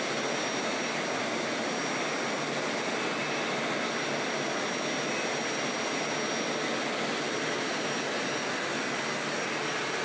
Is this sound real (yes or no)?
yes